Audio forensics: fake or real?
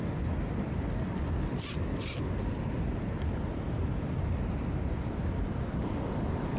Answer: real